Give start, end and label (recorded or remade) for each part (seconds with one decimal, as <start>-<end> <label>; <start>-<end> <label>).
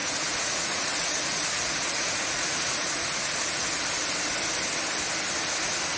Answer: 0.0-3.6 remade; 3.6-6.0 recorded